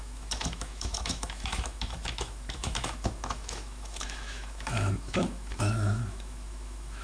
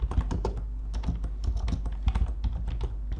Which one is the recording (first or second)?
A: second